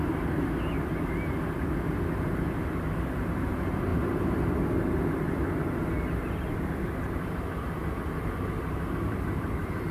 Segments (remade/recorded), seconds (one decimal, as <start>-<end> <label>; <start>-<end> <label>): 0.0-3.9 recorded; 3.9-4.5 remade; 4.5-9.9 recorded